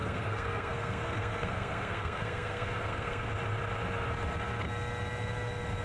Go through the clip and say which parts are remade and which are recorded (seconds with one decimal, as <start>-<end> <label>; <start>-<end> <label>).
0.0-3.3 remade; 3.3-5.8 recorded